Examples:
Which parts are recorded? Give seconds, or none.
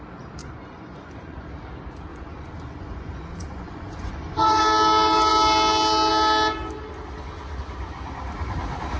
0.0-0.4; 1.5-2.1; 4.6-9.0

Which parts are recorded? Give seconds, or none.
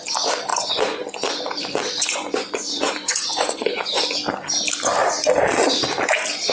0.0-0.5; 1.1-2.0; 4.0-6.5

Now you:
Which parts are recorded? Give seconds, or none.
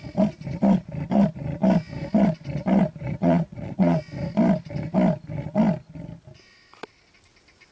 0.0-3.2; 4.0-7.7